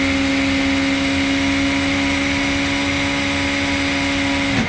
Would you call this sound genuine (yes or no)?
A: yes